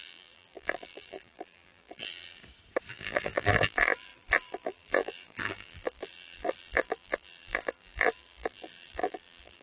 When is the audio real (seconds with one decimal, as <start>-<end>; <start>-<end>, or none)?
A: 2.4-2.9